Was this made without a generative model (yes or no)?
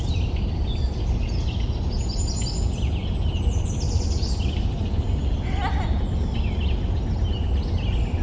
yes